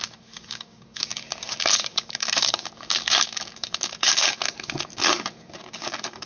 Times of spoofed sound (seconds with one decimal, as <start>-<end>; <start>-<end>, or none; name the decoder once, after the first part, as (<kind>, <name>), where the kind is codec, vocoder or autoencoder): 0.0-6.3 (codec, DAC)